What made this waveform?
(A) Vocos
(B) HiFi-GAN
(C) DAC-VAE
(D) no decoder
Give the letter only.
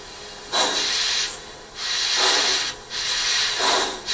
D